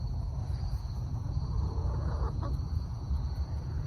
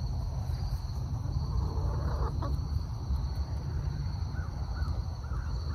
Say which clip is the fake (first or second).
first